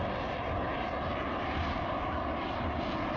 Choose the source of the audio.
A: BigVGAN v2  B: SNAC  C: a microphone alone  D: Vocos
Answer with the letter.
C